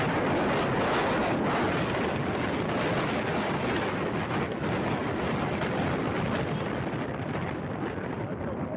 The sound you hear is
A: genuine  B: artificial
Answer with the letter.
A